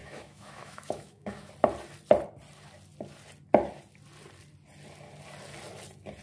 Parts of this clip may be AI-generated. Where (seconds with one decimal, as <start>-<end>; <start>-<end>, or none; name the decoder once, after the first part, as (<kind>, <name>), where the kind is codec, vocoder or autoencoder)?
0.0-1.5 (autoencoder, DAC-VAE)

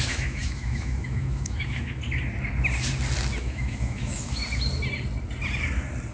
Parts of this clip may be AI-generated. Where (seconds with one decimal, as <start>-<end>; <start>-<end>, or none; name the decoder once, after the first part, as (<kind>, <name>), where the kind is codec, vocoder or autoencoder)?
0.0-2.0 (autoencoder, DAC-VAE); 3.4-4.4

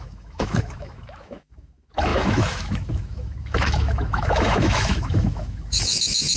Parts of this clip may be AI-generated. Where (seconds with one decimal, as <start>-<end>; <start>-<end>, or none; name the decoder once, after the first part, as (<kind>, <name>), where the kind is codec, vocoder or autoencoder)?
0.0-6.4 (autoencoder, DAC-VAE)